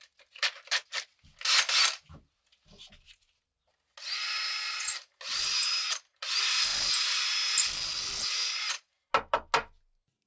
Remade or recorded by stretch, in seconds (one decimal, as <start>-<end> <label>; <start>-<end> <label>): 0.0-10.3 recorded